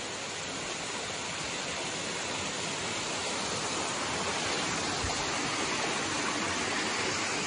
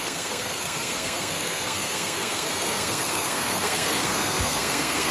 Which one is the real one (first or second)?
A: first